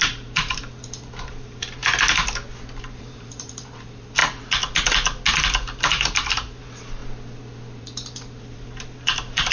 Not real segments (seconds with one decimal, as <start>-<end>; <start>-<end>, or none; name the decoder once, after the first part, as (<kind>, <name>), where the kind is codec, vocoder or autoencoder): 0.0-1.8 (vocoder, BigVGAN v2); 2.8-4.2; 5.8-7.0; 7.8-9.5